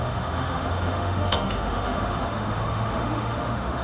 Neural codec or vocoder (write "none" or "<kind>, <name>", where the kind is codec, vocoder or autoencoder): autoencoder, DAC-VAE